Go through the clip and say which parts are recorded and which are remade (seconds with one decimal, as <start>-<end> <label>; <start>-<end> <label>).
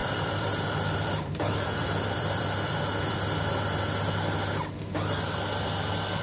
0.0-3.5 remade; 3.5-6.2 recorded